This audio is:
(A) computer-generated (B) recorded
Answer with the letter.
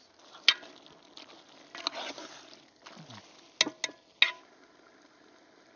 B